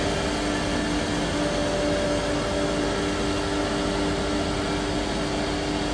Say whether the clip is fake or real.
real